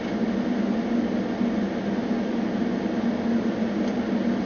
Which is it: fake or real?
real